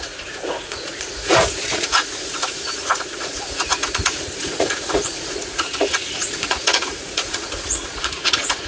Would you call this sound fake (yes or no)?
yes